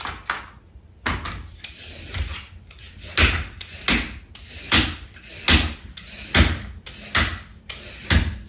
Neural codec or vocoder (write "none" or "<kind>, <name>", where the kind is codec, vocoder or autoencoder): none